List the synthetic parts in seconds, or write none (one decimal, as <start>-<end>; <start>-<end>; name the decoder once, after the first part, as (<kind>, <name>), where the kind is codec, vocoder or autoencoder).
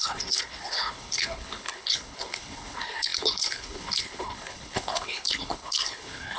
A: 0.0-6.4 (codec, HILCodec)